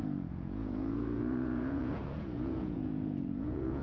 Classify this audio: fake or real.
fake